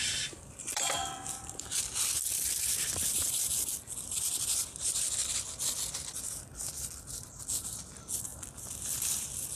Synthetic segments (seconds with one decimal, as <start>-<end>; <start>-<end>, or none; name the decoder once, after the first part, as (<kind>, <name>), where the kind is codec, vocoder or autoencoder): 0.0-9.6 (vocoder, BigVGAN v2)

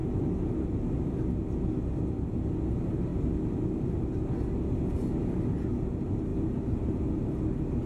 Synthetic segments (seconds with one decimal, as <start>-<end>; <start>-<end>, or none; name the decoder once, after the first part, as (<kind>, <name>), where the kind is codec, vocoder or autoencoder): 6.3-7.0 (vocoder, BigVGAN v2)

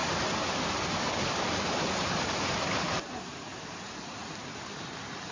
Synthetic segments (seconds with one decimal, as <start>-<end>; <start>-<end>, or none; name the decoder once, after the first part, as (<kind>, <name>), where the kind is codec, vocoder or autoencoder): 0.0-5.3 (vocoder, BigVGAN v2)

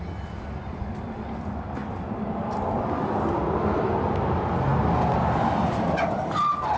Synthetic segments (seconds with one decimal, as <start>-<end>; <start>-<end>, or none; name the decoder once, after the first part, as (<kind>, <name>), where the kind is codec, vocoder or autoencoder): 0.0-1.8 (vocoder, BigVGAN v2); 3.3-4.7; 5.6-6.8

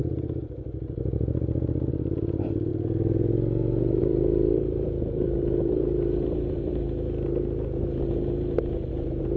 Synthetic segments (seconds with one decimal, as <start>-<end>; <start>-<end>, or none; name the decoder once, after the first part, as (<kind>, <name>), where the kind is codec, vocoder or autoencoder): 0.0-2.7 (vocoder, BigVGAN v2); 4.0-6.7; 8.9-9.4

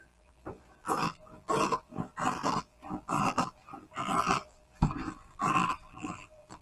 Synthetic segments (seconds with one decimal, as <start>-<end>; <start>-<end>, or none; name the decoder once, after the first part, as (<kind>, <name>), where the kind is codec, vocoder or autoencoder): 0.0-6.6 (vocoder, BigVGAN v2)